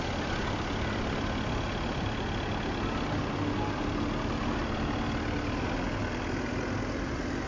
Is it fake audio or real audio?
real